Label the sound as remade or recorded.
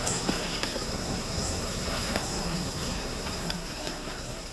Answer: remade